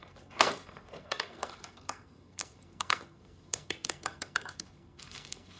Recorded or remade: remade